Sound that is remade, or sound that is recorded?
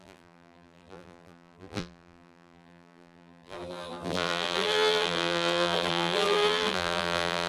remade